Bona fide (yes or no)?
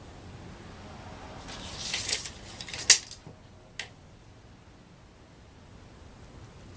yes